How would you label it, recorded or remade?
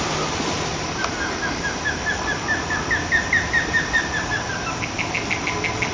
recorded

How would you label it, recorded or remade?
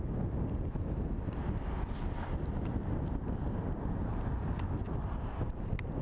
recorded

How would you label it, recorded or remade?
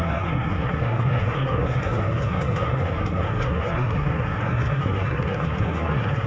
remade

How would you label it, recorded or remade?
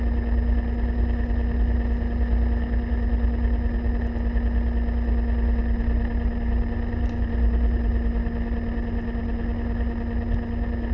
recorded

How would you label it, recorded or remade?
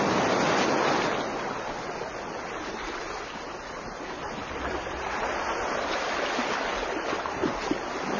recorded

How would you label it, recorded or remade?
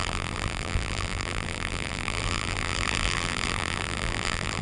remade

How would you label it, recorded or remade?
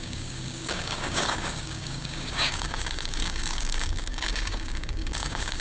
remade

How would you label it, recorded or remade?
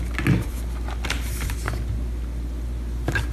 recorded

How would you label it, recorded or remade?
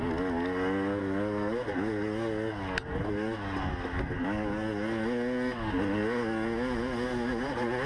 recorded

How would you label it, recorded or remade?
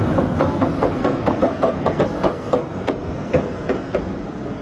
remade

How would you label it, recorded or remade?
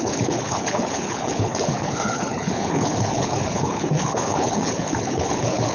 remade